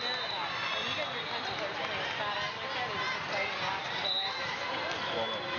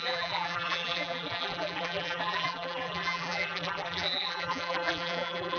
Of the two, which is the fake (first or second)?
second